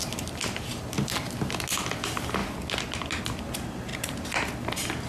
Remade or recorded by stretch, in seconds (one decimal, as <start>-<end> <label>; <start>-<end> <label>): 0.0-5.1 recorded